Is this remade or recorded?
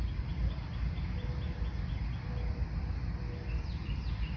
recorded